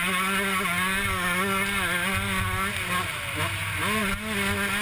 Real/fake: real